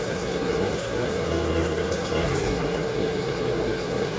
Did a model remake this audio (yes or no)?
yes